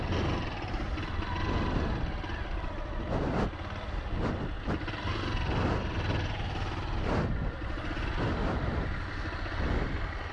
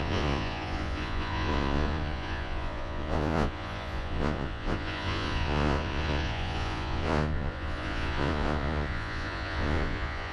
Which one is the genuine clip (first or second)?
first